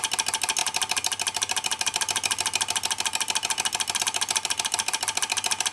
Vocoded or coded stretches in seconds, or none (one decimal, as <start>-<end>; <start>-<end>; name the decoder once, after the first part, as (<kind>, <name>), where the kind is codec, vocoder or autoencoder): none

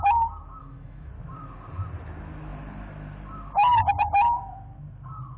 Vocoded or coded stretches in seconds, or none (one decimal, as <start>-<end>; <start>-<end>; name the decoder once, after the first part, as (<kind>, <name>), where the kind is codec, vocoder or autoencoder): 0.6-1.1 (autoencoder, DAC-VAE)